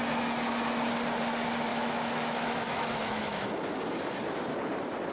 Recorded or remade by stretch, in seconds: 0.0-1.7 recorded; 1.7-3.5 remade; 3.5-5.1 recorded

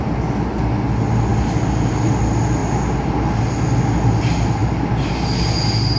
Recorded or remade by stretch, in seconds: 0.0-6.0 recorded

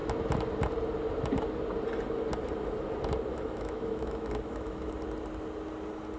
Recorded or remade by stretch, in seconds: 0.0-3.3 recorded; 3.3-4.9 remade; 4.9-6.2 recorded

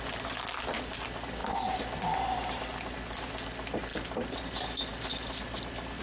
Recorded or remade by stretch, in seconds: 0.0-6.0 recorded